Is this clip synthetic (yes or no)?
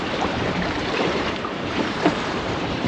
yes